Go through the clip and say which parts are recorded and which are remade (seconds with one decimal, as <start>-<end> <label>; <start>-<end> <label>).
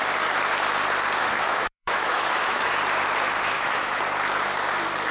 0.0-1.2 recorded; 1.2-2.7 remade; 2.7-3.3 recorded; 3.3-4.0 remade; 4.0-5.1 recorded